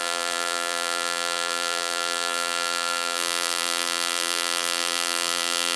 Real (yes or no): no